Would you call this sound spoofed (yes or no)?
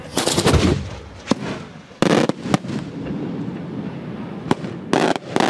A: no